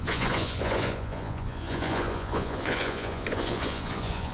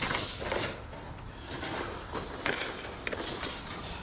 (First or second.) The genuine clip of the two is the second